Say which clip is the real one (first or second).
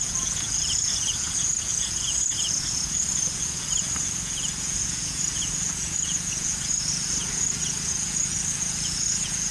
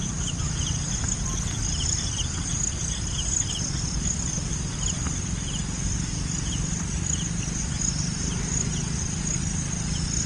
second